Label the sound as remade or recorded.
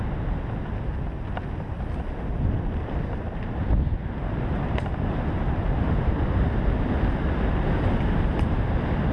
recorded